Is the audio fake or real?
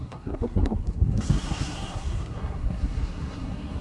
fake